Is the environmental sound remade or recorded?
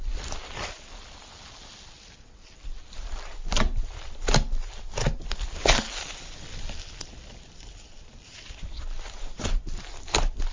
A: recorded